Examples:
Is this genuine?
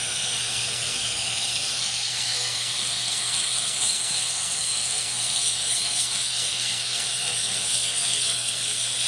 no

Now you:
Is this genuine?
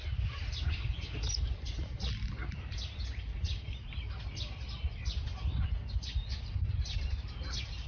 yes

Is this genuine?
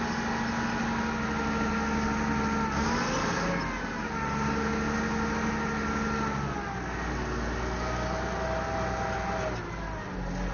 yes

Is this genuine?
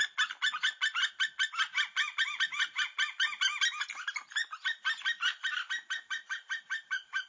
yes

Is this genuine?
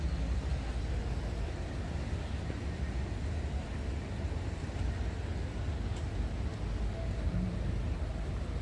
yes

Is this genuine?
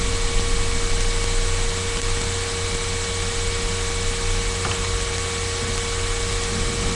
yes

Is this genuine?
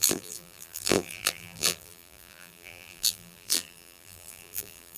no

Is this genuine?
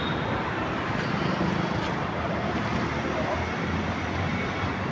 yes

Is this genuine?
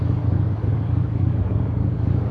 no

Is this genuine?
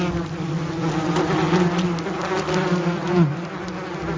yes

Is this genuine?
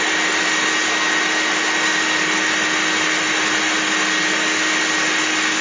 yes